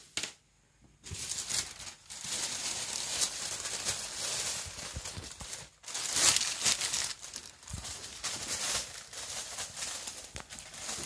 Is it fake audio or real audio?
real